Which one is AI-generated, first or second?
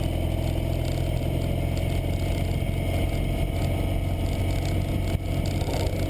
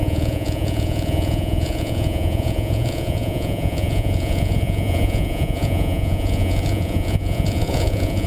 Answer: second